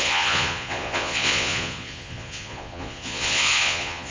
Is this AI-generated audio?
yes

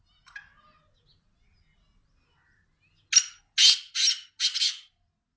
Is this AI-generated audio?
no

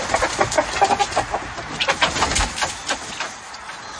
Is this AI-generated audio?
no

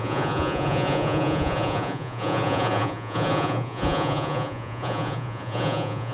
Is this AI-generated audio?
yes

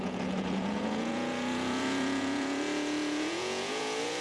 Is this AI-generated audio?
yes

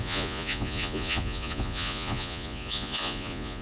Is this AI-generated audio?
yes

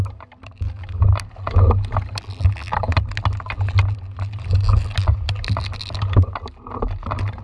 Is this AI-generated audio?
no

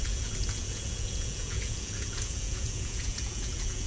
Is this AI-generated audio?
yes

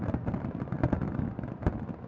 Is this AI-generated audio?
no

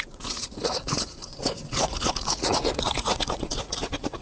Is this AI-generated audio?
yes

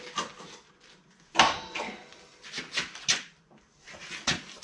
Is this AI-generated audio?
no